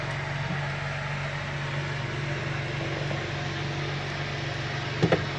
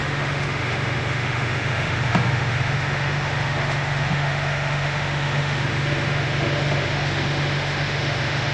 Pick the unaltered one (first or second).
first